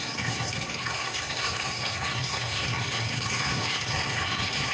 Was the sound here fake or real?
fake